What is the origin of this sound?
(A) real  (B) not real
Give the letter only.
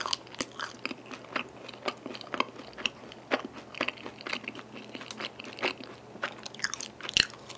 A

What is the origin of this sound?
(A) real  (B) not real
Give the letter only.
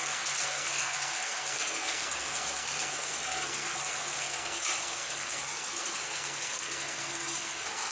B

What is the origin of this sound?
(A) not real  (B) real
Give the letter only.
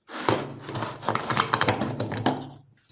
B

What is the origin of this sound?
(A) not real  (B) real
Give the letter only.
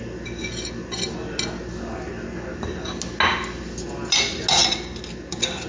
B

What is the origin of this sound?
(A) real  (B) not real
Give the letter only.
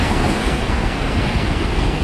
B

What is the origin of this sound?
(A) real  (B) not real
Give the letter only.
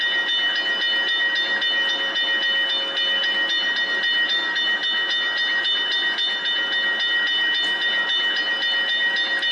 A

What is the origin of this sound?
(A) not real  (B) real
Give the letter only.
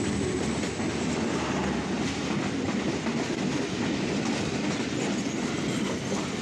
B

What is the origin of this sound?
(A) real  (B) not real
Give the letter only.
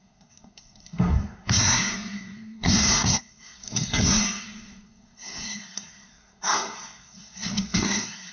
B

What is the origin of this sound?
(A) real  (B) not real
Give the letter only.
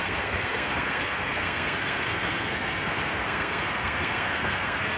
B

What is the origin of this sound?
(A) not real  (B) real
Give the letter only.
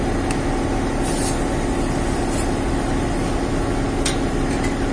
B